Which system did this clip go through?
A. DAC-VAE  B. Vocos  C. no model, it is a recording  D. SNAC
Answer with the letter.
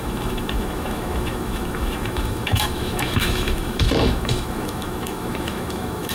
A